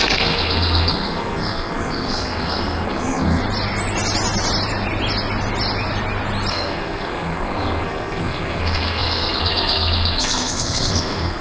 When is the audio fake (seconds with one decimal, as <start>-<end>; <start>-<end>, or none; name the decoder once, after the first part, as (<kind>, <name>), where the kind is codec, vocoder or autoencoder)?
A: 0.0-3.4 (codec, SNAC); 6.5-11.4